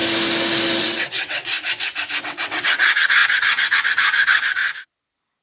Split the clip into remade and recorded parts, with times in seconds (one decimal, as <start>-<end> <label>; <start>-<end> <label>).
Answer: 0.0-0.8 recorded; 0.8-1.5 remade; 1.5-2.2 recorded; 2.2-4.6 remade; 4.6-5.4 recorded